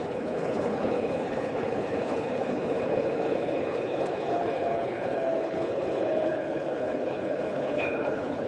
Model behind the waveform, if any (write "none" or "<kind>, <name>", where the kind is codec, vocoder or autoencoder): codec, HILCodec